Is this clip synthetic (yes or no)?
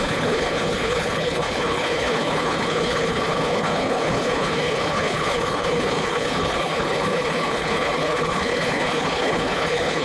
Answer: yes